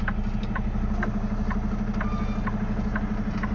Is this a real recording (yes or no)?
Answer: yes